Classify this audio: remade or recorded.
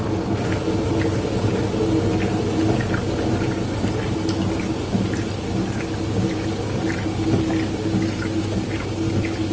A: recorded